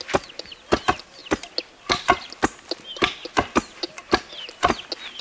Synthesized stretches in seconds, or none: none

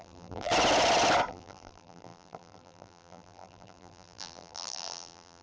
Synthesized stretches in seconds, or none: 0.0-0.5 (vocoder, BigVGAN v2); 1.3-5.4